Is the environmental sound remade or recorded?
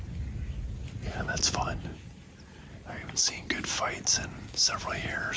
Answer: recorded